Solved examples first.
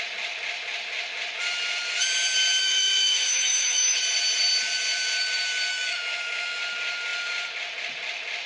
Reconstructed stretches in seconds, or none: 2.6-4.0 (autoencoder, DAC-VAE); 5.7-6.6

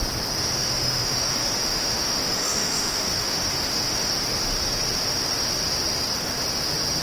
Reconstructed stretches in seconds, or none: 0.6-4.1 (autoencoder, DAC-VAE)